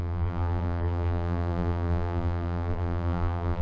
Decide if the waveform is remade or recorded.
remade